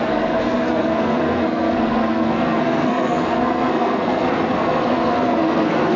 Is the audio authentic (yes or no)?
no